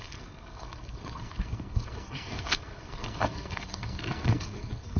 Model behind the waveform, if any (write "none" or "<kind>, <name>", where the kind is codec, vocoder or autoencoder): codec, SNAC